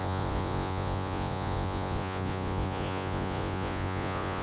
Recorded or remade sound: remade